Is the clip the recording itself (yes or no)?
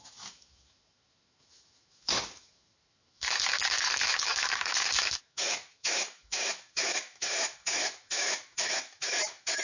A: no